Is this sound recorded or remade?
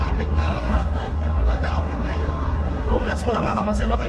remade